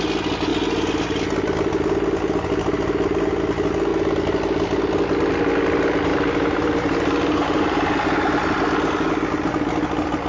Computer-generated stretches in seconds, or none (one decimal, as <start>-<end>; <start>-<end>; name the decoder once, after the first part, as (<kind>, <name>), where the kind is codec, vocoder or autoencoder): 6.1-7.9 (vocoder, BigVGAN v2)